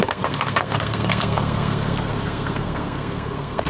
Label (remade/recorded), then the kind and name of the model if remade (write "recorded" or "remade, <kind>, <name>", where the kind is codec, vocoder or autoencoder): remade, codec, SNAC